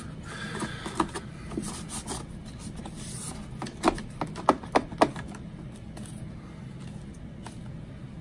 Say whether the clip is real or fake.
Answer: real